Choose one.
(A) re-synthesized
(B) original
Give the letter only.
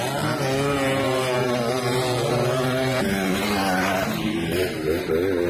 B